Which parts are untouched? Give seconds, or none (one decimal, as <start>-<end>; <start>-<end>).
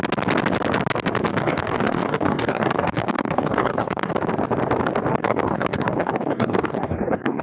0.0-1.3; 4.1-5.1